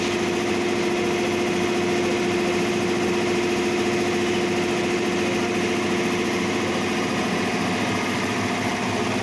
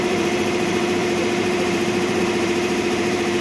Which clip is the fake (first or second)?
second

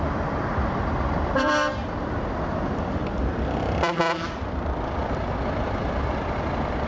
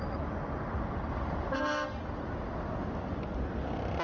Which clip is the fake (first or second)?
first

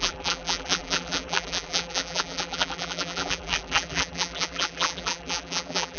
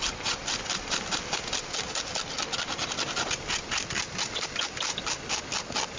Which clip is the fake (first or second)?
first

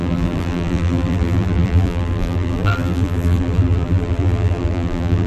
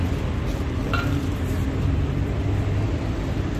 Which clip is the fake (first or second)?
first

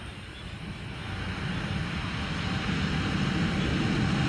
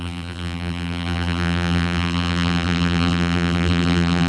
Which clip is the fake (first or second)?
second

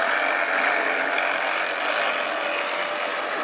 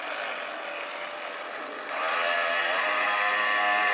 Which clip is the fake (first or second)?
second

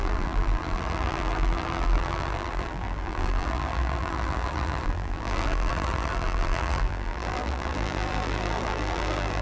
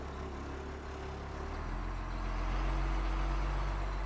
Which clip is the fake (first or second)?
first